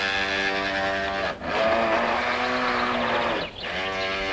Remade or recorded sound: recorded